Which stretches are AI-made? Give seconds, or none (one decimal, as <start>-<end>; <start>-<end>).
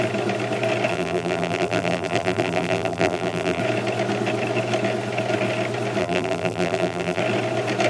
0.9-3.6; 6.0-7.2